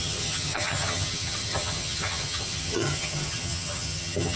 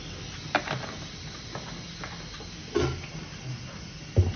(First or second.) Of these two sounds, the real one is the second